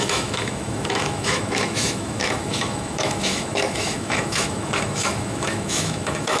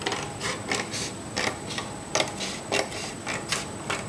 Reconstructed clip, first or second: first